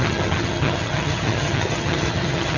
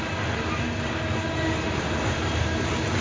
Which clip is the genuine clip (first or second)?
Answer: second